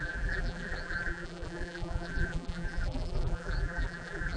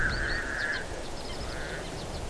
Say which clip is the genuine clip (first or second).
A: second